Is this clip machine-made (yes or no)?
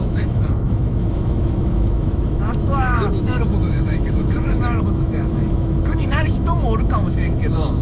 yes